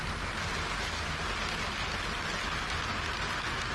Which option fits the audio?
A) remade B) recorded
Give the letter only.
B